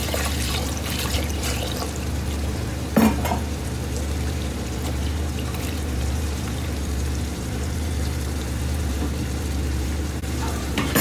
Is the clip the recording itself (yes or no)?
no